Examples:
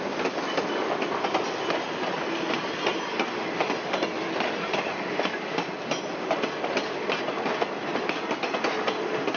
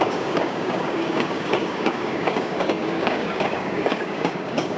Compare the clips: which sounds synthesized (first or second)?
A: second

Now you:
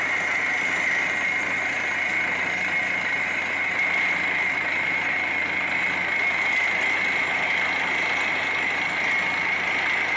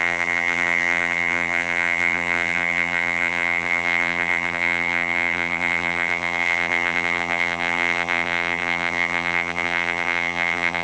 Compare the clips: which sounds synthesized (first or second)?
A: second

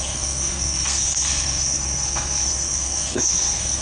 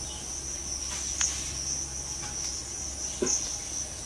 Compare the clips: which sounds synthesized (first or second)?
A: first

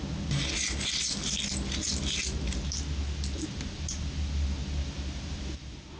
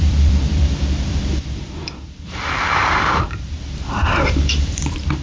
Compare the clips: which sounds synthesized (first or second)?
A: second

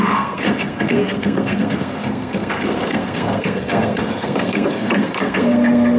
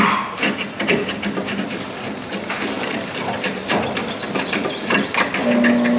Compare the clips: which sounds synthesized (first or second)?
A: first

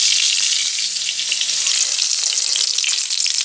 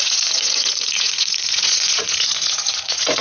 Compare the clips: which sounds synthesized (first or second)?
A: second